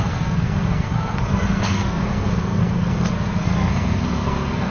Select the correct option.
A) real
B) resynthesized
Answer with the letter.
B